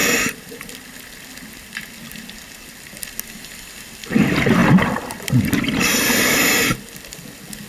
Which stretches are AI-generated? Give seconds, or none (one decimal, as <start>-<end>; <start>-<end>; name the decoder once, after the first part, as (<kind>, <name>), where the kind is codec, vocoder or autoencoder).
0.0-0.7 (vocoder, BigVGAN v2)